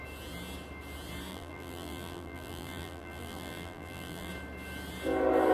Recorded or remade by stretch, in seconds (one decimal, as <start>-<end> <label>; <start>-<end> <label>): 0.0-1.3 recorded; 1.3-4.3 remade; 4.3-5.5 recorded